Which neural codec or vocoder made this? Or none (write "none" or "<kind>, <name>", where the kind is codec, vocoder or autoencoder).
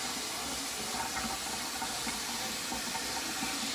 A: none